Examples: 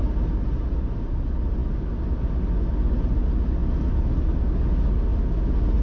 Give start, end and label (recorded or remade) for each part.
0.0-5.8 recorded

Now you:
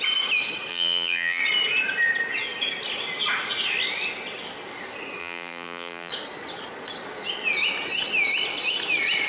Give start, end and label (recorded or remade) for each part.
0.0-0.7 recorded; 0.7-1.4 remade; 1.4-5.2 recorded; 5.2-6.1 remade; 6.1-9.3 recorded

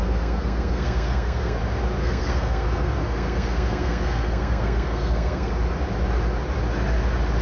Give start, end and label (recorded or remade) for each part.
0.0-1.6 remade; 1.6-2.0 recorded; 2.0-5.5 remade; 5.5-7.4 recorded